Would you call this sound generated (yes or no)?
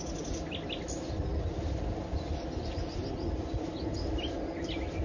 no